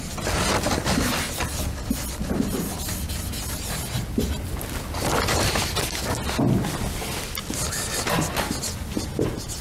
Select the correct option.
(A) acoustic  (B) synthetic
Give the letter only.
A